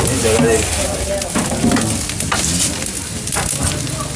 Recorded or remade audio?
recorded